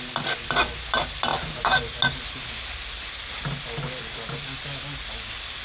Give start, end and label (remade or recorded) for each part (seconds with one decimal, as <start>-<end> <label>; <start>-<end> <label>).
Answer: 0.0-5.6 recorded